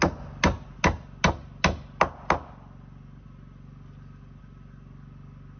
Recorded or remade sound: recorded